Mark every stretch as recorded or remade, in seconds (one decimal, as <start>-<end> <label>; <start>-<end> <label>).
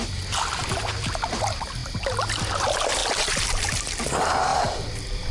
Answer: 0.0-3.0 recorded; 3.0-3.7 remade; 3.7-4.5 recorded; 4.5-5.3 remade